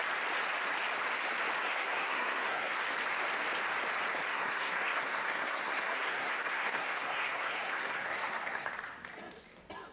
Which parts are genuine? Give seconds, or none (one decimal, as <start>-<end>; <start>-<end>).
0.0-1.6; 2.8-4.3; 8.7-9.9